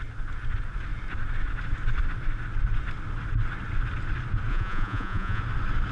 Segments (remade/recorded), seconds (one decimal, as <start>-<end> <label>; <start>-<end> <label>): 0.0-4.5 recorded; 4.5-5.4 remade; 5.4-5.9 recorded